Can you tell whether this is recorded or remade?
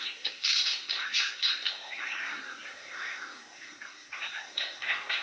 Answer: remade